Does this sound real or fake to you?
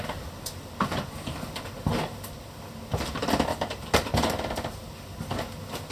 fake